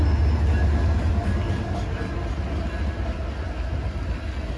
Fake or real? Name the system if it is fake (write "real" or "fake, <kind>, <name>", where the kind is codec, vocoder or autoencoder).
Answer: real